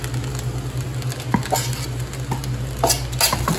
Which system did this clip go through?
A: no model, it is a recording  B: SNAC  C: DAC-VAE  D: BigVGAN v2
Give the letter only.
A